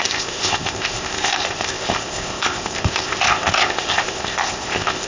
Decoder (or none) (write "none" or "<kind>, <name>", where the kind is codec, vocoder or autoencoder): codec, ZipCodec